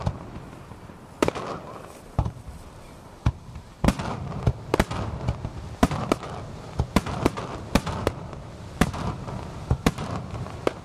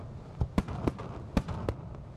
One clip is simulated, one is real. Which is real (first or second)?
second